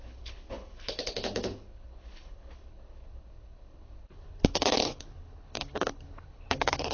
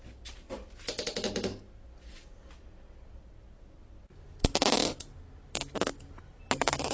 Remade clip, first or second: first